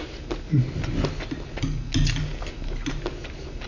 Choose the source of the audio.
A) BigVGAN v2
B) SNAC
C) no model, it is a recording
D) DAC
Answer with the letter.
C